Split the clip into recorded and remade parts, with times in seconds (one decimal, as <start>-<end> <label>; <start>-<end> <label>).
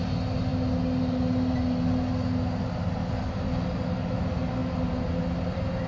0.0-5.9 recorded